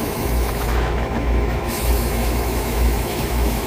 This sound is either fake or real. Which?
fake